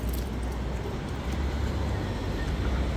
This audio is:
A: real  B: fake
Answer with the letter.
A